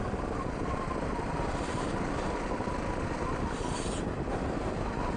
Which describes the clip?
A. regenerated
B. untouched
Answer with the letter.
B